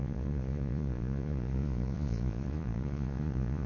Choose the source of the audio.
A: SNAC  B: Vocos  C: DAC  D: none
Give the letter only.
B